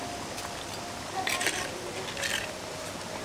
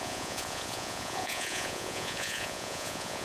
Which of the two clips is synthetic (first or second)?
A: second